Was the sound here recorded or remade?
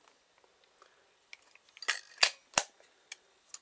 recorded